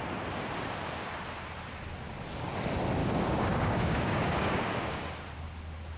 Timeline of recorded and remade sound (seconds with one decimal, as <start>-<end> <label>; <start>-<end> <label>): 0.0-3.0 recorded; 3.0-5.1 remade; 5.1-6.0 recorded